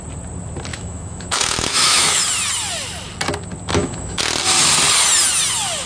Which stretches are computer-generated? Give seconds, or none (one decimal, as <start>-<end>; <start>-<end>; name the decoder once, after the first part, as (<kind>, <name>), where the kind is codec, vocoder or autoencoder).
0.7-2.2 (autoencoder, DAC-VAE); 3.7-4.2